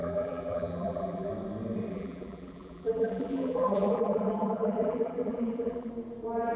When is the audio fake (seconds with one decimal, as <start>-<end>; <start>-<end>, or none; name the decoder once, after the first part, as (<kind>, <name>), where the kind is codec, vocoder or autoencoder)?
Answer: 0.0-1.3 (vocoder, BigVGAN v2); 1.9-5.9